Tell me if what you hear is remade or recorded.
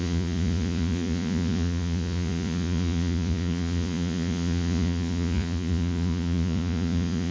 remade